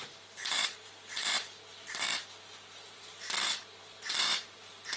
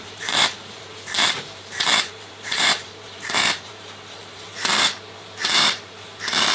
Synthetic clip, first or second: second